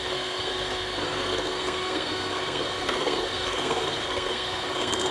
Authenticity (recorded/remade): remade